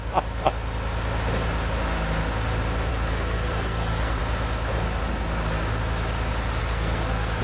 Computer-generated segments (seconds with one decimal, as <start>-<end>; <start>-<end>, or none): 2.9-4.2; 6.6-7.4